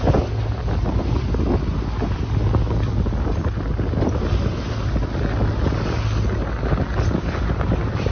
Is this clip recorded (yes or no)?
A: yes